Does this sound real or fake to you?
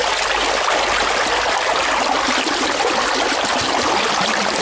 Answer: real